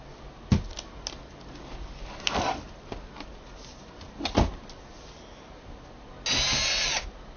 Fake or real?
real